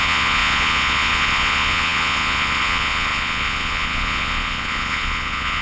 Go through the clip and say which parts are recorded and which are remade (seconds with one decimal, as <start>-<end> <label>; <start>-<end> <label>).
0.0-5.6 remade